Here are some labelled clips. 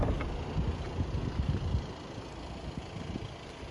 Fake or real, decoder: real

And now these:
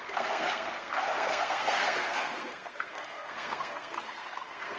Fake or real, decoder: fake, codec, SNAC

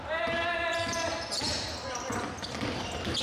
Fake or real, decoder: real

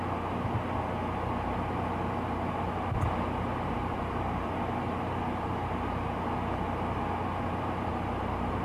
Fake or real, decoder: real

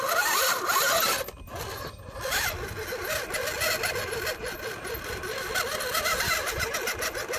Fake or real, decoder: real